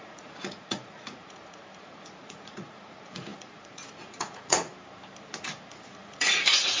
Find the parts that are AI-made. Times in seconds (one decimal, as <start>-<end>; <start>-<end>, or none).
0.0-4.7; 5.7-6.8